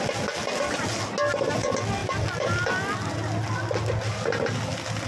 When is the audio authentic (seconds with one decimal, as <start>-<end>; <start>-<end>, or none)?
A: 0.0-5.1